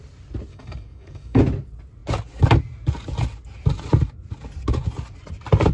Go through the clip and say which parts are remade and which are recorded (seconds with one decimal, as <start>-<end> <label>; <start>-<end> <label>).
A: 0.0-0.5 recorded; 0.5-1.4 remade; 1.4-5.7 recorded